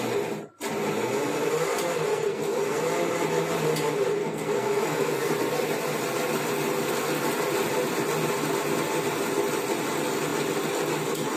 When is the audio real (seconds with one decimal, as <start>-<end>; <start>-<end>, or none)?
0.0-2.1; 2.8-4.2; 5.3-11.4